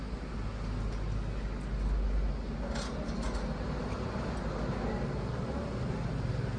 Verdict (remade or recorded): recorded